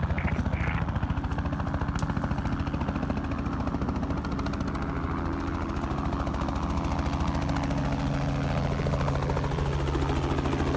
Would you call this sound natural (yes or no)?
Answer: yes